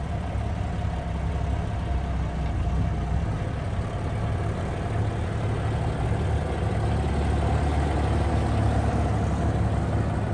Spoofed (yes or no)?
no